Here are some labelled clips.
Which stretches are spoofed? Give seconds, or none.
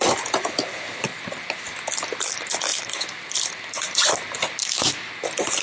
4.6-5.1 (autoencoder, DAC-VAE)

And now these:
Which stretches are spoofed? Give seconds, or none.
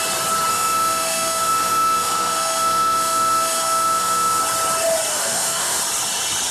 0.5-4.4 (autoencoder, DAC-VAE); 5.1-5.8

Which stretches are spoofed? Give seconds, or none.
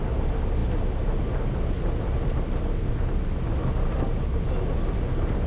none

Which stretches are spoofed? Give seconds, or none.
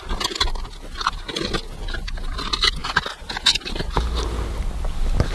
none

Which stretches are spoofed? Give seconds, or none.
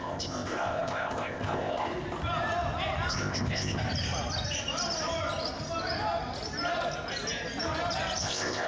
0.0-1.9 (codec, ZipCodec); 3.1-3.8; 8.2-8.7